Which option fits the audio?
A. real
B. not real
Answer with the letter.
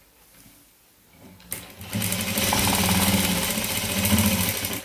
A